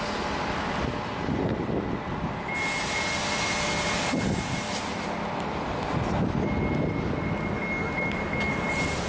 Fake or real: real